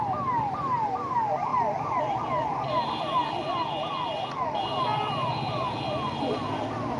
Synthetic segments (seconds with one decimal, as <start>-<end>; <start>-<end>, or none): none